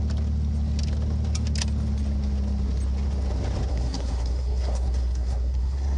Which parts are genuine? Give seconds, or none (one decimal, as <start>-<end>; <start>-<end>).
0.0-3.7